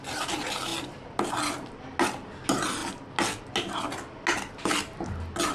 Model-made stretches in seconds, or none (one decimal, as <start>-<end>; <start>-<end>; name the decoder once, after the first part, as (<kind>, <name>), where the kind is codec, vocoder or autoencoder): none